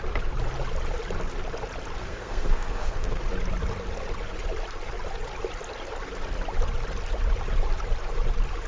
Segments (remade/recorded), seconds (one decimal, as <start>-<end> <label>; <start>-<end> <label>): 0.0-2.0 recorded; 2.0-3.2 remade; 3.2-8.7 recorded